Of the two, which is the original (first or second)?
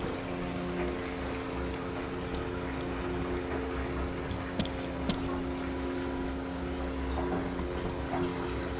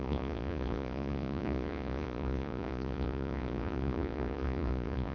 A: first